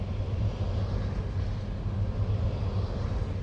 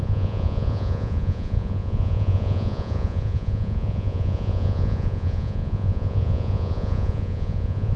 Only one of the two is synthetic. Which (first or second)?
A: second